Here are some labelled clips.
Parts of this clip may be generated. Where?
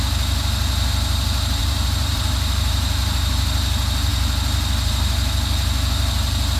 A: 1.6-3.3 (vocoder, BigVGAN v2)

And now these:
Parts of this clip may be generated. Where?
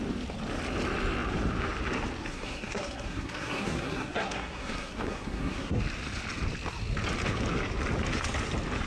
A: 2.3-5.8 (codec, SNAC)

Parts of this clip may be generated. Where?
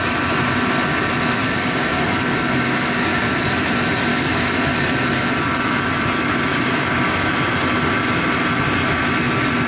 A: 1.4-3.3 (codec, DAC); 4.1-4.7; 6.5-7.3